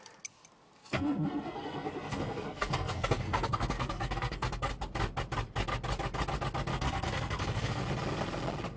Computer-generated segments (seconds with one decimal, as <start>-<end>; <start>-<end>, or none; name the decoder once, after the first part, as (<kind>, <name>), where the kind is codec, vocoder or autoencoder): 0.8-4.7 (codec, SNAC); 6.7-7.8